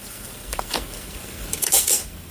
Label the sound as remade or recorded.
remade